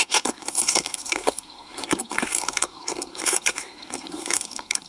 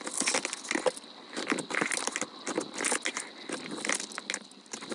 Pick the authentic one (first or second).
second